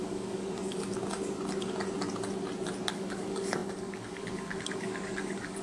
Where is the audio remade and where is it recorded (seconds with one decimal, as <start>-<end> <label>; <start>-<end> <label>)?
0.0-0.6 remade; 0.6-2.9 recorded; 2.9-5.6 remade